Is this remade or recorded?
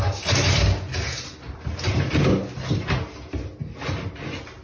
recorded